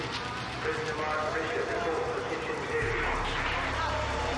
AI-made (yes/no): no